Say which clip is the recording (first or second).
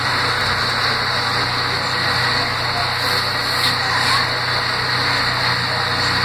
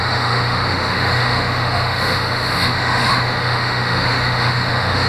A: first